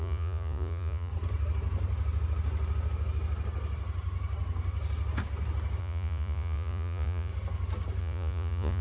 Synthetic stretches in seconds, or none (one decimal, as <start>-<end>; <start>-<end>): 0.0-1.1; 5.8-7.3; 8.0-8.8